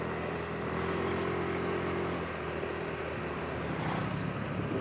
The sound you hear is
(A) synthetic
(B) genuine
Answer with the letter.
B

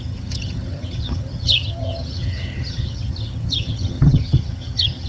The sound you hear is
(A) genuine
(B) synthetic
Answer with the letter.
B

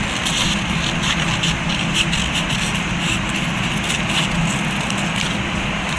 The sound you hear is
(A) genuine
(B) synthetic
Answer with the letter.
A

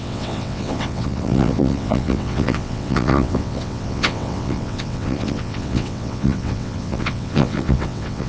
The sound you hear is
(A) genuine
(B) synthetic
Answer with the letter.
B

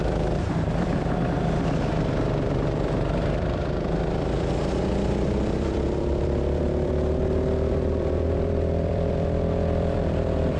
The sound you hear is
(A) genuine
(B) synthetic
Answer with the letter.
B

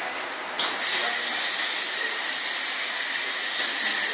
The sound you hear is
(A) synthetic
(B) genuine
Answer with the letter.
B